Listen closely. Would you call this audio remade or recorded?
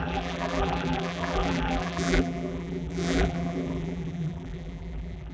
remade